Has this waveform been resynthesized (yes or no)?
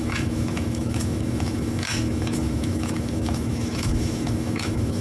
yes